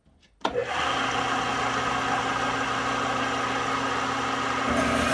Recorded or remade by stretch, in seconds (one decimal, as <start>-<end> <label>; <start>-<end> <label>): 0.0-5.1 recorded